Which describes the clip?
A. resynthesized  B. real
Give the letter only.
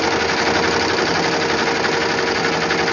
B